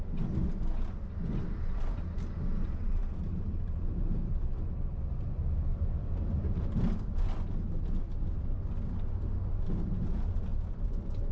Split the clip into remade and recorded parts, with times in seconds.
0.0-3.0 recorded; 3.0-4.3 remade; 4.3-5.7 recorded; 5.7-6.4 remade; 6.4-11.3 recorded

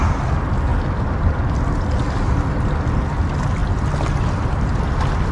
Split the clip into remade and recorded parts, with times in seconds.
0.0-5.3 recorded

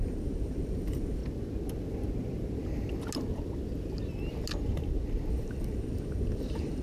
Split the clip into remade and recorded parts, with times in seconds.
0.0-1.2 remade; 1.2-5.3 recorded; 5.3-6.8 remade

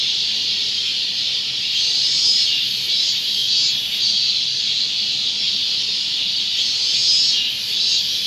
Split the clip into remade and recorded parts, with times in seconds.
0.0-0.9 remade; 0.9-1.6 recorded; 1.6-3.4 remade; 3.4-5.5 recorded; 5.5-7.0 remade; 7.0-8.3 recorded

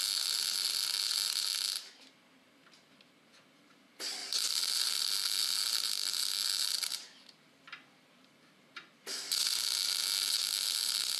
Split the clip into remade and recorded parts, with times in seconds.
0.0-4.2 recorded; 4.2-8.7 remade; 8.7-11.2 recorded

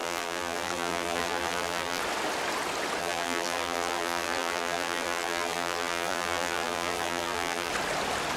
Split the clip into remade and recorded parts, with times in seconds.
0.0-2.0 remade; 2.0-3.0 recorded; 3.0-7.7 remade; 7.7-8.4 recorded